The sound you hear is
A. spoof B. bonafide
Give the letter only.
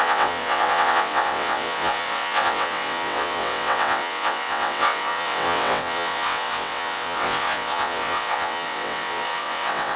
A